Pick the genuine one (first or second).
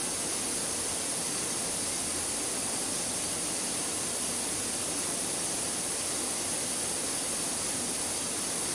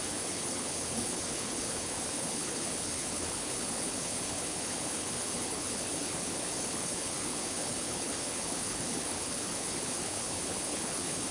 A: first